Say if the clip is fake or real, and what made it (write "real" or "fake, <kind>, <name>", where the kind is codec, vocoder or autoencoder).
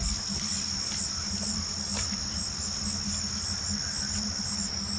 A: real